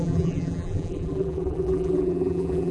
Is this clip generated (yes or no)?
yes